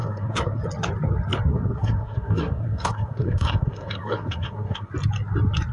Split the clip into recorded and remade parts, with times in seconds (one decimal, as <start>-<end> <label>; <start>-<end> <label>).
0.0-0.6 remade; 0.6-1.5 recorded; 1.5-4.9 remade; 4.9-5.7 recorded